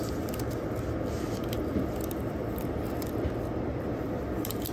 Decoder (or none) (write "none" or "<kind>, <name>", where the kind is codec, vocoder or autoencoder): none